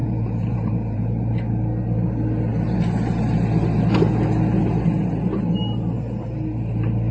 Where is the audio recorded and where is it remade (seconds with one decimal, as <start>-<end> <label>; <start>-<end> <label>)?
0.0-1.1 remade; 1.1-7.1 recorded